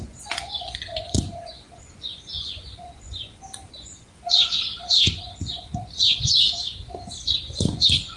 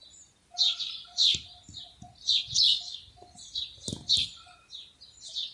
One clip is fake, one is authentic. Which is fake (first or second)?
first